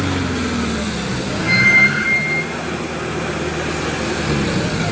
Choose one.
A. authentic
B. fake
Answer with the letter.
A